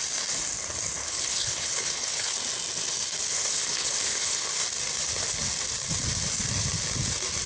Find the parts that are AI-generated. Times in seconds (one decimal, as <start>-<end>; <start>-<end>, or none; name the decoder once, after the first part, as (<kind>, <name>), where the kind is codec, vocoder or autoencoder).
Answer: 1.0-2.4 (codec, HILCodec); 3.3-4.5